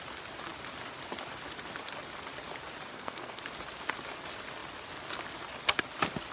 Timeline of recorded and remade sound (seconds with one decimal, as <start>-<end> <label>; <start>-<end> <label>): 0.0-2.9 recorded; 2.9-3.4 remade; 3.4-6.3 recorded